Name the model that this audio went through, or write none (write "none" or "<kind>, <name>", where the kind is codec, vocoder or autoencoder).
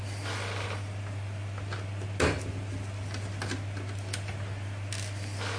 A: none